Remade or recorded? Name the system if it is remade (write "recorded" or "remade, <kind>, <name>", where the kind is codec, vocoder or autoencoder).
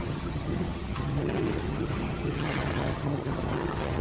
remade, vocoder, HiFi-GAN